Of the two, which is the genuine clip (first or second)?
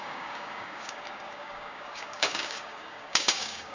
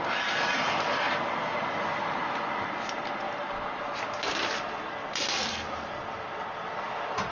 second